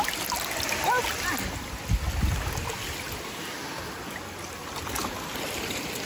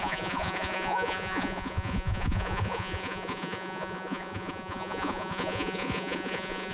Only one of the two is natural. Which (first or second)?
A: first